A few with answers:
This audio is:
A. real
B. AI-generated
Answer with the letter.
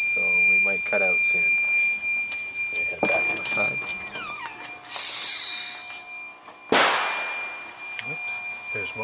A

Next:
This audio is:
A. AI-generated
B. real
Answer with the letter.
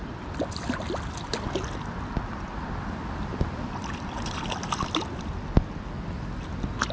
B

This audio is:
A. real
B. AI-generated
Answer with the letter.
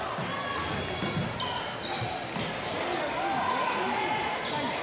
A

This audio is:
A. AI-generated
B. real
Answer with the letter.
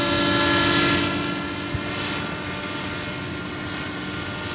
B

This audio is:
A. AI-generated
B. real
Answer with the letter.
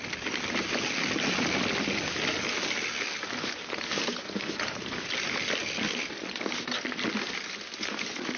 B